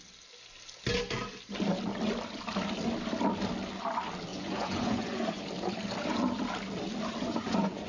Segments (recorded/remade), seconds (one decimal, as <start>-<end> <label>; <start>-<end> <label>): 0.0-4.3 recorded; 4.3-5.4 remade; 5.4-7.2 recorded; 7.2-7.9 remade